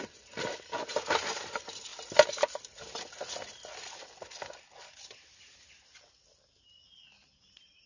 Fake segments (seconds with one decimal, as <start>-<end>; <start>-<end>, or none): none